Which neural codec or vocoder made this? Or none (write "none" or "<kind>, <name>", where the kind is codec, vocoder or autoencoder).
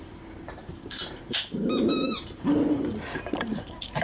vocoder, BigVGAN v2